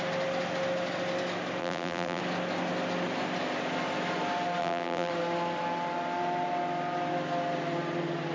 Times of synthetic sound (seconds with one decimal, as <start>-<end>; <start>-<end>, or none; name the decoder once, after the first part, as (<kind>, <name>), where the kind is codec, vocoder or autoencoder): 1.6-2.2 (vocoder, BigVGAN v2); 4.6-5.1